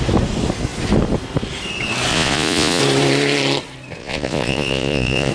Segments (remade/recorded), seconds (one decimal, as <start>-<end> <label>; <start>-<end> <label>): 0.0-2.1 recorded; 2.1-2.8 remade; 2.8-4.0 recorded; 4.0-5.3 remade